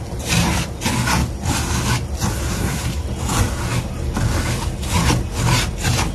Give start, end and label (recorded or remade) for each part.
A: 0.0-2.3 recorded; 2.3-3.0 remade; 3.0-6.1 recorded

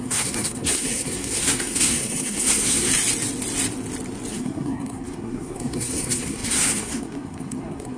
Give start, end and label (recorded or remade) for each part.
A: 0.0-2.9 remade; 2.9-4.3 recorded; 4.3-8.0 remade

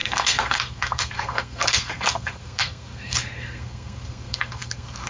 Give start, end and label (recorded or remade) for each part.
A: 0.0-5.1 remade

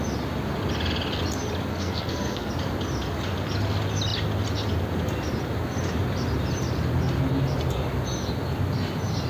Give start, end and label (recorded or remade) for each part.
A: 0.0-1.7 recorded; 1.7-2.5 remade; 2.5-9.3 recorded